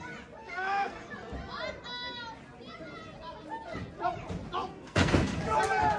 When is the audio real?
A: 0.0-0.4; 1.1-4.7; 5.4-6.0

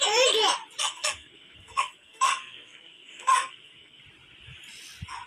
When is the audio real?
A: 0.0-0.8; 4.0-5.3